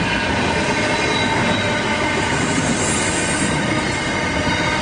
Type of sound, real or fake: real